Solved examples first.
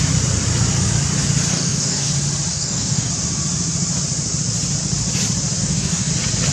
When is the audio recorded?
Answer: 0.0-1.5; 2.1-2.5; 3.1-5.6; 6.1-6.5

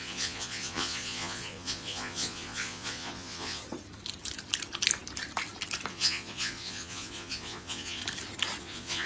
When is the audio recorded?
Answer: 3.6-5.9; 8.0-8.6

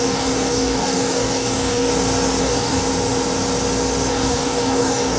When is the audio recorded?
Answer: 1.9-2.4; 2.8-4.1

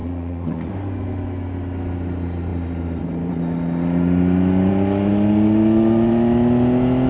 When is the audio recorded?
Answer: 0.7-7.1

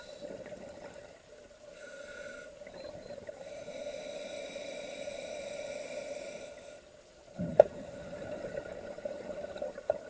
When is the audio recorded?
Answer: 0.0-1.7; 3.8-4.4; 5.7-7.5; 8.5-10.1

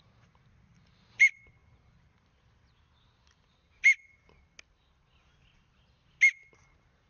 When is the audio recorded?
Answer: 0.0-7.1